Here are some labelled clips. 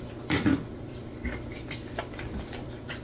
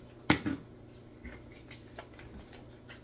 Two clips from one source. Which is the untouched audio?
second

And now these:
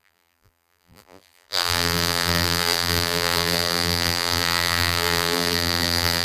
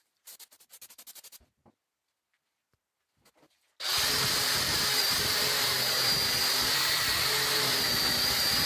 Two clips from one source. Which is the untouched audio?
second